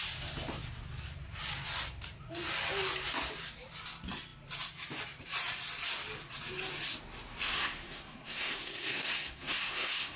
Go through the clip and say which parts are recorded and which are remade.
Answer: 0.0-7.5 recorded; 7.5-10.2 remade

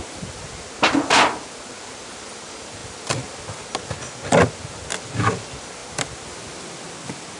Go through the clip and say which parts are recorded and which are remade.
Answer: 0.0-7.4 recorded

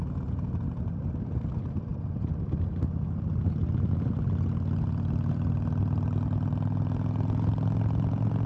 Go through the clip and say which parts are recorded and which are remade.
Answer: 0.0-8.5 recorded

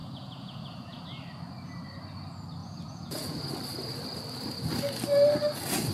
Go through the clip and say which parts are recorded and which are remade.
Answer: 0.0-1.0 remade; 1.0-2.6 recorded; 2.6-3.4 remade; 3.4-5.9 recorded